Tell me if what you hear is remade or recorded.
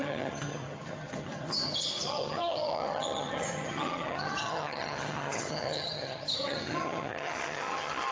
remade